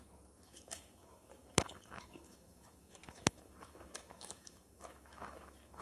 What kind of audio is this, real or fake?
fake